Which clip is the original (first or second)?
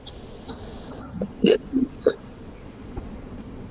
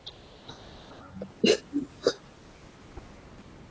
second